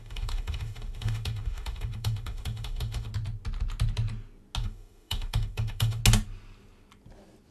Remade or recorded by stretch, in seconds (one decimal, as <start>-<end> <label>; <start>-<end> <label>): 0.0-3.1 remade; 3.1-4.6 recorded; 4.6-6.0 remade; 6.0-7.5 recorded